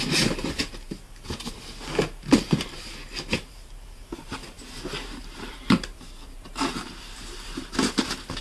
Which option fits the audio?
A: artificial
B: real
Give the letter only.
A